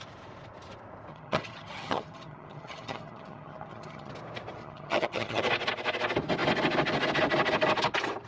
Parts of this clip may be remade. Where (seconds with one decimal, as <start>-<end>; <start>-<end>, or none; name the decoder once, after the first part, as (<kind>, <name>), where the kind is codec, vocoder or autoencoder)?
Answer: 1.1-4.1 (vocoder, HiFi-GAN); 4.6-5.4